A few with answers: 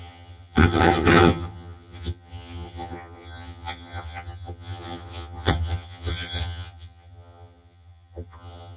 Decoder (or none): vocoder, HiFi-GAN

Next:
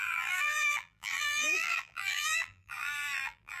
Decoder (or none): vocoder, BigVGAN v2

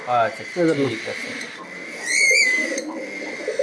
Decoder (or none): none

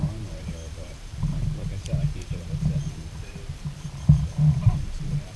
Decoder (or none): vocoder, BigVGAN v2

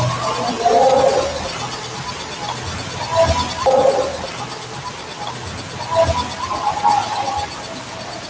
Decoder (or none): none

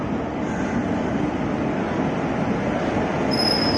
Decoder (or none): none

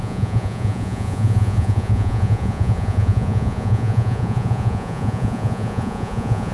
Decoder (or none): vocoder, Vocos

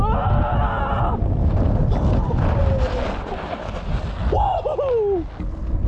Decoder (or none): none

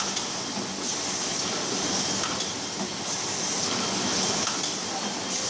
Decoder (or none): none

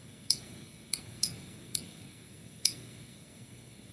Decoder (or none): codec, SNAC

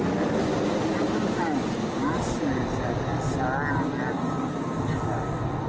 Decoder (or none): none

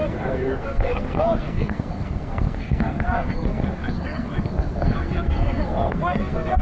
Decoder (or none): codec, SNAC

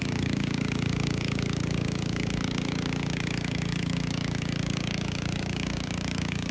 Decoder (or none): codec, DAC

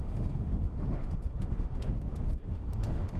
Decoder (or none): autoencoder, DAC-VAE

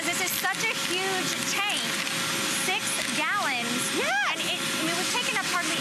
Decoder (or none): none